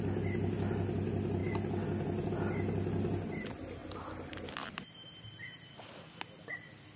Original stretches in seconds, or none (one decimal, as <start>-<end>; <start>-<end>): 0.0-7.0